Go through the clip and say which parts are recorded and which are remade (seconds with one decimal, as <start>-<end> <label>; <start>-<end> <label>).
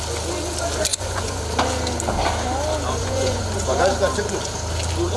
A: 0.0-0.9 recorded; 0.9-1.4 remade; 1.4-3.0 recorded; 3.0-3.6 remade; 3.6-5.2 recorded